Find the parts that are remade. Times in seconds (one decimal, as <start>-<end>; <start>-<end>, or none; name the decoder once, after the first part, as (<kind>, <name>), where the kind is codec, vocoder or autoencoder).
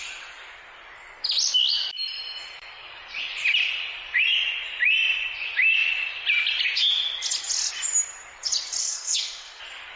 8.8-9.6 (codec, SNAC)